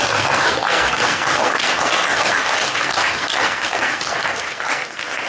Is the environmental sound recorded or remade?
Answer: remade